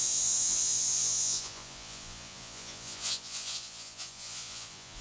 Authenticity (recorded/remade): remade